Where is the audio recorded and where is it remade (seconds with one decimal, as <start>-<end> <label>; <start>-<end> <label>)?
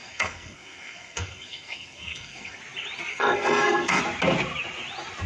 0.0-2.6 remade; 2.6-3.1 recorded; 3.1-4.0 remade; 4.0-5.3 recorded